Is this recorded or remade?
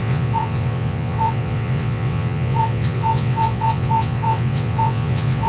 remade